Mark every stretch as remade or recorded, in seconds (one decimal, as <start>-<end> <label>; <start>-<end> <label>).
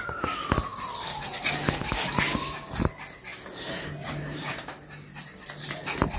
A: 0.0-6.2 recorded